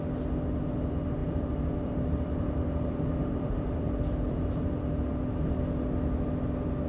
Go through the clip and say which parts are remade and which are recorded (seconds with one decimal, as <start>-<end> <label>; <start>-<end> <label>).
0.0-1.2 recorded; 1.2-5.2 remade; 5.2-6.9 recorded